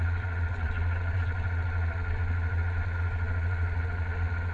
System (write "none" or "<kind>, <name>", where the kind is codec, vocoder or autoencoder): vocoder, Vocos